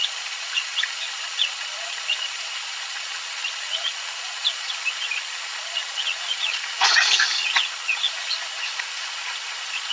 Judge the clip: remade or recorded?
remade